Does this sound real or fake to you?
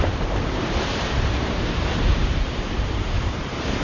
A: fake